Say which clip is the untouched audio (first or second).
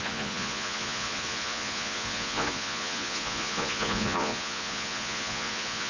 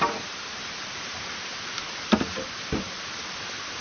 second